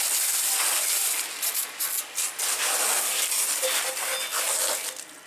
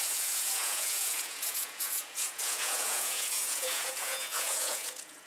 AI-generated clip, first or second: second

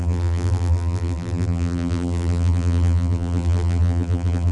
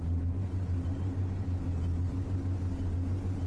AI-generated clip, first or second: first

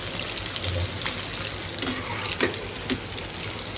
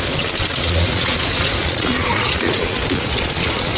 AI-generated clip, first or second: second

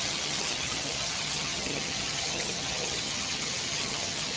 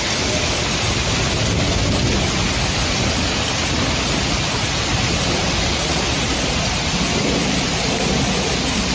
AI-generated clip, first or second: first